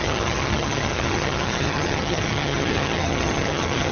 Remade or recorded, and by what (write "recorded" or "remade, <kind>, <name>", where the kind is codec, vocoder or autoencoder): remade, vocoder, HiFi-GAN